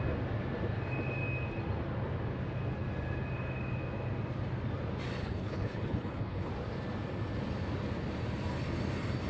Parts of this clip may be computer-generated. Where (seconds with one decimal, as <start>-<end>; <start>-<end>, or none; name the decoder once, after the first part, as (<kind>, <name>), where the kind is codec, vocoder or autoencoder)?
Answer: 5.2-6.5 (codec, HILCodec)